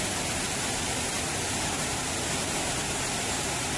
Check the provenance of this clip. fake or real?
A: fake